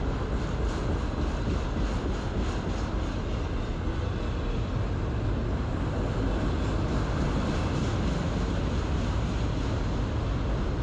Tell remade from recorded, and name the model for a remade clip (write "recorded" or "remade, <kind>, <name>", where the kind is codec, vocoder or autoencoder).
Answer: recorded